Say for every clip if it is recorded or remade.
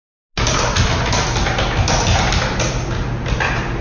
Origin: recorded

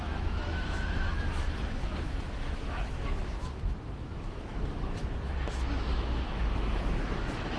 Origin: remade